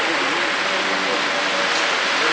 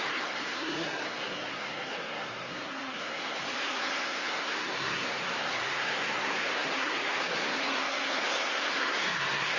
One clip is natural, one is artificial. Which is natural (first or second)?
first